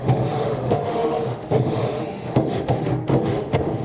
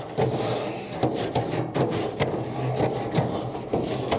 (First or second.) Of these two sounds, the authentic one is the second